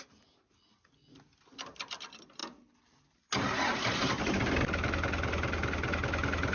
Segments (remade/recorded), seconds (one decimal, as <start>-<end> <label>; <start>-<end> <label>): 0.0-6.5 recorded